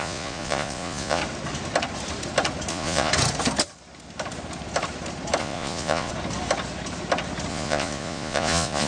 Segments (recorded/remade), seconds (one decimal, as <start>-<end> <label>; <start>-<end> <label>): 0.0-1.2 remade; 1.2-2.7 recorded; 2.7-3.1 remade; 3.1-5.4 recorded; 5.4-6.1 remade; 6.1-7.5 recorded; 7.5-8.9 remade